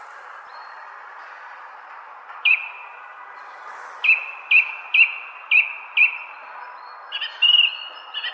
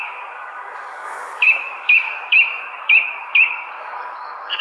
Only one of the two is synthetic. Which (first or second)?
second